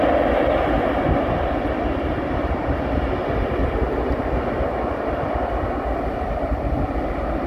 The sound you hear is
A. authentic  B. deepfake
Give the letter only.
A